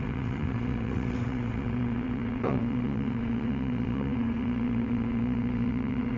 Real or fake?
fake